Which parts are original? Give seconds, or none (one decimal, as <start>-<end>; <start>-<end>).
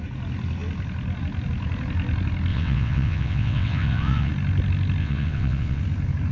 0.0-2.5; 4.3-5.0; 5.8-6.3